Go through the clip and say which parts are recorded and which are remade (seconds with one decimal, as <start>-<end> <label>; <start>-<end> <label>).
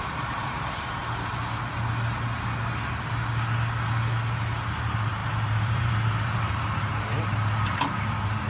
0.0-1.0 remade; 1.0-4.8 recorded; 4.8-8.5 remade